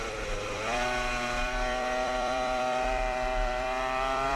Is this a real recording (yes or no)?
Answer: no